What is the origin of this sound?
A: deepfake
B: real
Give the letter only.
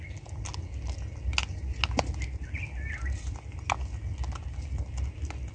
B